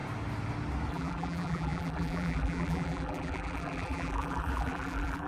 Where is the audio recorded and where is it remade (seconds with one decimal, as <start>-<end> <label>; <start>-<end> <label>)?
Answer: 0.0-0.9 recorded; 0.9-5.3 remade

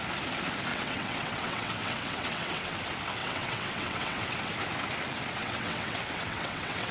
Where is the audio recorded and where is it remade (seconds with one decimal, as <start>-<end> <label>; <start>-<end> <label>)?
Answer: 0.0-0.7 recorded; 0.7-2.8 remade; 2.8-3.2 recorded; 3.2-4.5 remade; 4.5-5.4 recorded; 5.4-6.9 remade

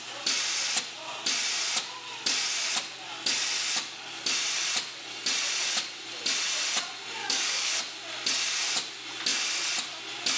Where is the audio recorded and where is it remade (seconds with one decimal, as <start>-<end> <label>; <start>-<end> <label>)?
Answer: 0.0-7.2 recorded; 7.2-7.8 remade; 7.8-10.4 recorded

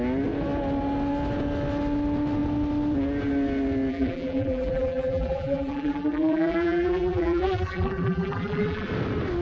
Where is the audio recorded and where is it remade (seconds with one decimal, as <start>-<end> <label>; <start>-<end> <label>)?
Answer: 0.0-3.9 recorded; 3.9-8.9 remade; 8.9-9.4 recorded

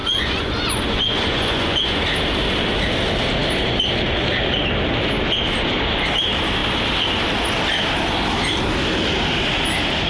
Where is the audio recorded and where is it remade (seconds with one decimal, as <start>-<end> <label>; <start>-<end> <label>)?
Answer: 0.0-2.0 remade; 2.0-10.1 recorded

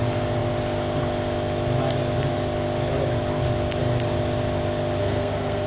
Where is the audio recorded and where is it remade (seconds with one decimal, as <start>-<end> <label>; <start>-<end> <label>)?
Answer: 0.0-5.0 recorded; 5.0-5.7 remade

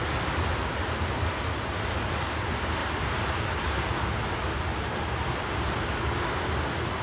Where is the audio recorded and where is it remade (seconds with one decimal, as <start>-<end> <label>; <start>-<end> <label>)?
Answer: 0.0-7.0 recorded